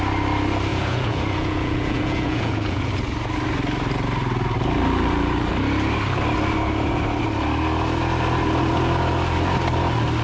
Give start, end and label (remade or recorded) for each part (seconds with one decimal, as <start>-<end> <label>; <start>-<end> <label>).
0.0-0.7 recorded; 0.7-2.9 remade; 2.9-10.2 recorded